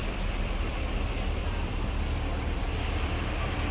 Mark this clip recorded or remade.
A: remade